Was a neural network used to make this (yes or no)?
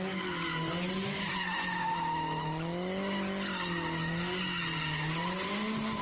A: no